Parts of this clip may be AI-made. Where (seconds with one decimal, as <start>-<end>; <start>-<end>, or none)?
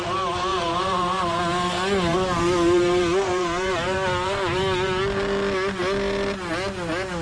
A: 0.5-1.4; 2.1-5.0